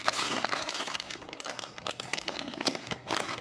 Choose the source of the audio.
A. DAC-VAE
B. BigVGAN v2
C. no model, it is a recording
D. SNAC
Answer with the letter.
D